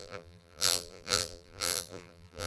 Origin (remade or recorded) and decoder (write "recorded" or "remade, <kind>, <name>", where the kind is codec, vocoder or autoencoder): remade, vocoder, BigVGAN v2